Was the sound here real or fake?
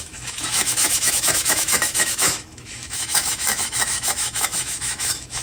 fake